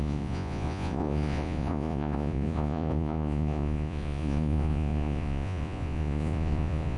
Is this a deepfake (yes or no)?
yes